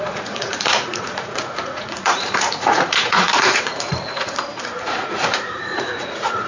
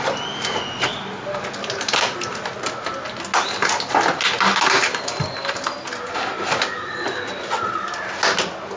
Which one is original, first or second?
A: second